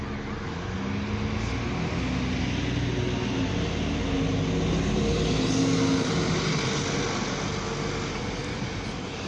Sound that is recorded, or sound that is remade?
recorded